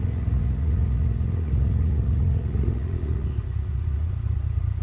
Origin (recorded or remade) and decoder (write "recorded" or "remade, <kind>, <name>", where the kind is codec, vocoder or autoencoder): remade, vocoder, Vocos